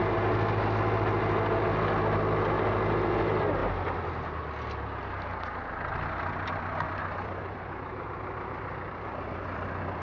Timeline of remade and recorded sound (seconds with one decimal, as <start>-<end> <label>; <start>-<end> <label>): 0.0-10.0 recorded

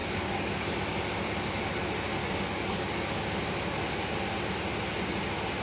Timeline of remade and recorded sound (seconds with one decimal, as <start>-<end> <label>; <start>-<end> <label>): 0.0-0.7 remade; 0.7-2.2 recorded; 2.2-3.0 remade; 3.0-5.6 recorded

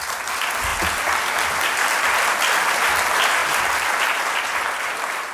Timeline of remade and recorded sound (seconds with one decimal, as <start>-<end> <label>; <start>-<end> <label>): 0.0-5.3 recorded

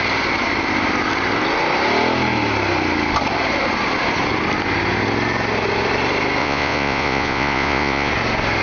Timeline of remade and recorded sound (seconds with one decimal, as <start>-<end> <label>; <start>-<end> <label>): 0.0-6.4 recorded; 6.4-8.1 remade; 8.1-8.6 recorded